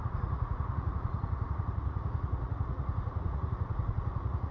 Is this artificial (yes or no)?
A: yes